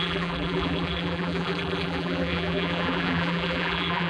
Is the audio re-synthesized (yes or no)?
yes